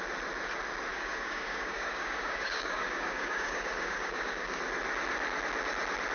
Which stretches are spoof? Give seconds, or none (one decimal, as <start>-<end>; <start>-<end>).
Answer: 0.9-4.6